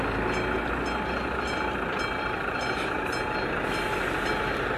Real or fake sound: real